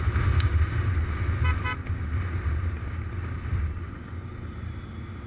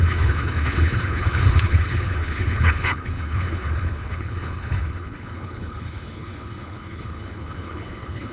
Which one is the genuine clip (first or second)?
first